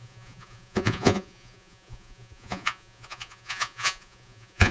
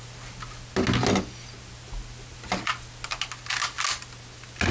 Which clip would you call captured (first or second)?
second